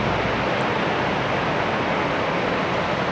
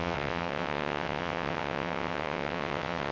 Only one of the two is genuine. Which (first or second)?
first